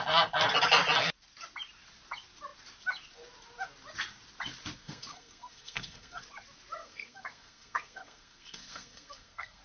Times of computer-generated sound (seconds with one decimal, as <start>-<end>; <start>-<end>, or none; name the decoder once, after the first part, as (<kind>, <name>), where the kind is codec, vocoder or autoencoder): 4.8-6.2 (codec, SNAC); 6.8-9.6